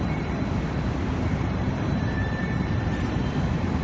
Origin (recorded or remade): remade